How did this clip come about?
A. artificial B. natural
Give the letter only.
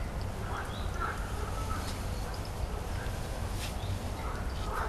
B